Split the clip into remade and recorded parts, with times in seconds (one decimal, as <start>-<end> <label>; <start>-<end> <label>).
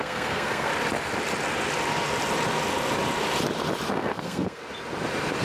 0.0-0.7 remade; 0.7-3.9 recorded; 3.9-4.6 remade; 4.6-5.4 recorded